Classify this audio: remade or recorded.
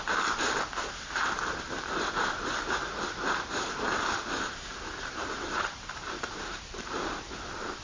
remade